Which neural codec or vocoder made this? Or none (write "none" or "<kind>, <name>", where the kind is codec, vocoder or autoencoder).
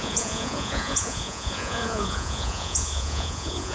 vocoder, Vocos